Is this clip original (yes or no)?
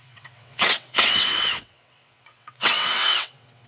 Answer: no